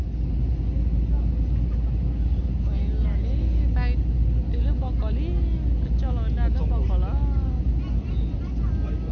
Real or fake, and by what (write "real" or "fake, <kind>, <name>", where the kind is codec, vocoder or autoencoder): real